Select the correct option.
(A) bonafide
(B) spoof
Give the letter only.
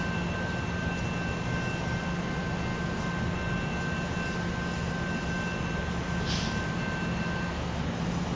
A